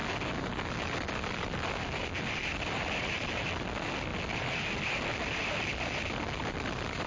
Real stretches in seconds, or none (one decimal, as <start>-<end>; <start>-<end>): 0.0-0.8